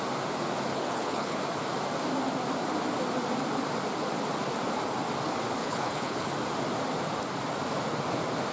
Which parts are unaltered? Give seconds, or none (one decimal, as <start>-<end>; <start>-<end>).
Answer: 0.0-0.7; 1.4-5.6; 6.3-8.5